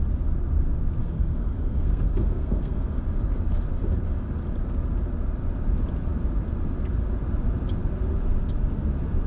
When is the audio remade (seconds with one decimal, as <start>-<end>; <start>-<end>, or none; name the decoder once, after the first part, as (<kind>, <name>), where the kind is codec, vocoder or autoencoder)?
1.0-3.0 (codec, SNAC)